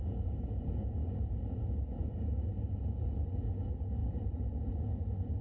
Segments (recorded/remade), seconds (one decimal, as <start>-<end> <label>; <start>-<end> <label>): 0.0-4.0 recorded; 4.0-4.7 remade; 4.7-5.4 recorded